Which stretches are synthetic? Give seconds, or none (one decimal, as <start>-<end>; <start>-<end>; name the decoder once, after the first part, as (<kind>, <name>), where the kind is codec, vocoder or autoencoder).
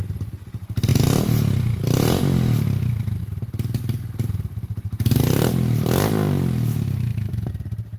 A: 6.7-7.5 (autoencoder, DAC-VAE)